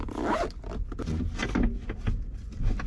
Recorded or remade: recorded